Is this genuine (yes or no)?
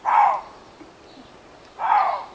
yes